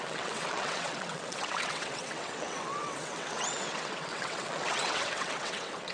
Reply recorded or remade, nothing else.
remade